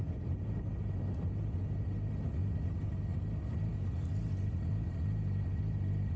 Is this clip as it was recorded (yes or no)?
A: yes